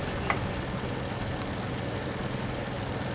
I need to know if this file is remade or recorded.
recorded